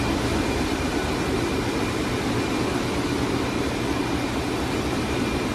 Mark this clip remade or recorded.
recorded